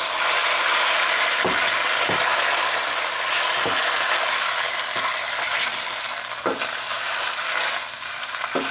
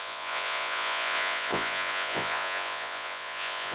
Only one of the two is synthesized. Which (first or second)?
second